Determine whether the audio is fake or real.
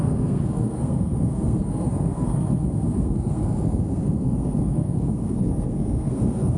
fake